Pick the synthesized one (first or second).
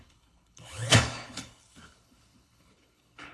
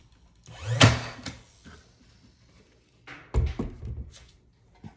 first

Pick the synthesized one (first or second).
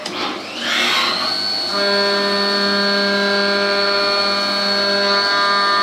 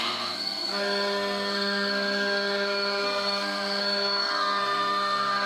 second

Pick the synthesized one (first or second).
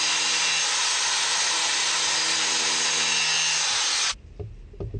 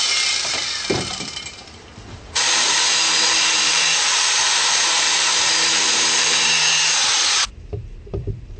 second